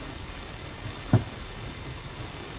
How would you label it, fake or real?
fake